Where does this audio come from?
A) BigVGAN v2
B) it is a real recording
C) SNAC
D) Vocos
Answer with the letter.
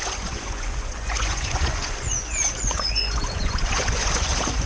D